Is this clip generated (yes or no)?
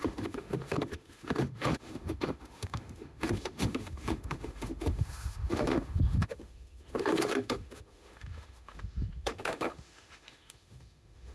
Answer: yes